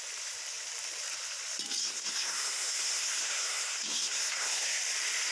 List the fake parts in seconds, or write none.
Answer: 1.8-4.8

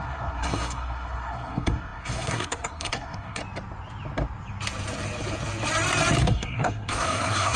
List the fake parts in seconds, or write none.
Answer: 0.0-3.4; 6.2-7.6

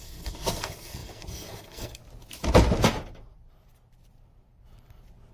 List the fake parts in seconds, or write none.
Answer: 0.0-2.0

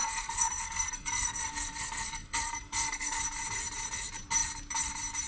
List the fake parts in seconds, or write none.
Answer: 0.0-3.2

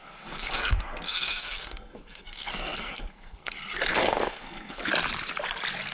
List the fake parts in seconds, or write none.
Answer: 0.0-3.5; 3.9-4.9

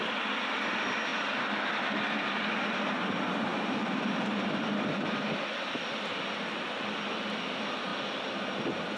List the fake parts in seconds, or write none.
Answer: none

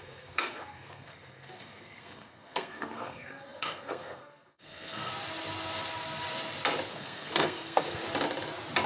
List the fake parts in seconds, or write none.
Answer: 0.0-5.1; 6.9-8.0

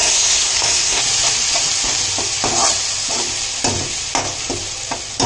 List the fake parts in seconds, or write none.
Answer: 0.0-1.0